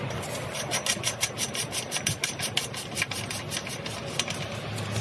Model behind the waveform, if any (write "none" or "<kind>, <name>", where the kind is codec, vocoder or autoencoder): none